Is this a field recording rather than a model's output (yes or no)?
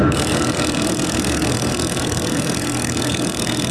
no